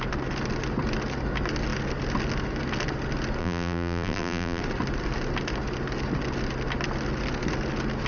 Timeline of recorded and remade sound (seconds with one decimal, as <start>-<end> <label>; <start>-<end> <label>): 0.0-3.4 recorded; 3.4-4.6 remade; 4.6-8.1 recorded